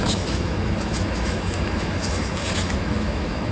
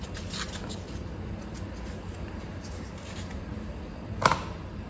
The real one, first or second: second